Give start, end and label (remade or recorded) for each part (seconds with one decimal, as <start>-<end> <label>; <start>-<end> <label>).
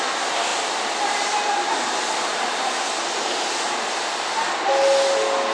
0.0-0.5 recorded; 0.5-3.7 remade; 3.7-5.5 recorded